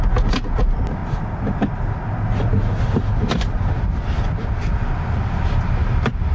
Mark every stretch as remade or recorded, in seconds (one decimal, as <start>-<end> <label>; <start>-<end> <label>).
0.0-6.3 recorded